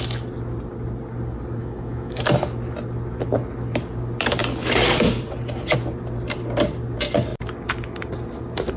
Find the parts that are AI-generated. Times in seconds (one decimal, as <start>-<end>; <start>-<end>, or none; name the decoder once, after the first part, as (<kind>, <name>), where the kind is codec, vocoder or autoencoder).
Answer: 1.6-2.2 (autoencoder, DAC-VAE)

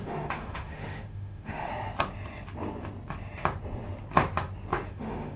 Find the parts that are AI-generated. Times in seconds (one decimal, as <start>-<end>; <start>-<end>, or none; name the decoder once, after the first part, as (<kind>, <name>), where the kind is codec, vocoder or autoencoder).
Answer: 0.0-1.7 (autoencoder, DAC-VAE); 4.9-5.4

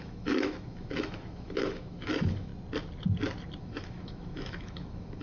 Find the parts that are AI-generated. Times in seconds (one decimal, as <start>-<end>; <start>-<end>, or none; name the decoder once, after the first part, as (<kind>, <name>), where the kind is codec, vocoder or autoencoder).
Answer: 0.0-2.5 (autoencoder, DAC-VAE); 3.6-5.2

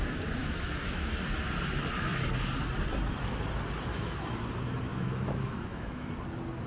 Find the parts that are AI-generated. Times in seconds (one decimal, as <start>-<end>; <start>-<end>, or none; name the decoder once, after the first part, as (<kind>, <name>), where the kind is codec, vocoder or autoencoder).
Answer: 0.4-1.1 (autoencoder, DAC-VAE); 3.9-4.4; 4.9-6.1